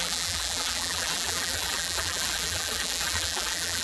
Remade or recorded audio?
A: remade